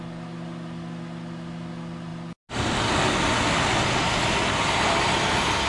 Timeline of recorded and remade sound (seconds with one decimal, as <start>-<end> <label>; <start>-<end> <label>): 0.0-5.7 recorded